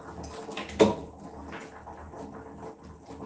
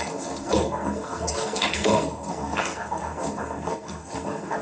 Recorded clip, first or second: first